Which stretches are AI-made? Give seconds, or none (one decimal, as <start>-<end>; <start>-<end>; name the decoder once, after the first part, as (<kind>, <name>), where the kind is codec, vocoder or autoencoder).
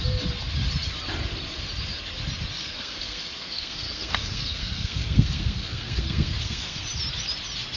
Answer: 2.6-6.8 (codec, SNAC)